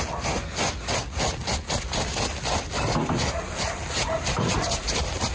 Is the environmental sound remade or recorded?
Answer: recorded